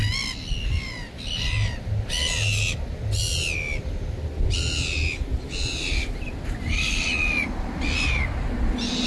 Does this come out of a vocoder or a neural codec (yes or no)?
no